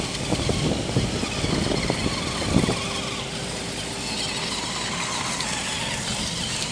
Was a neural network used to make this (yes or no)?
no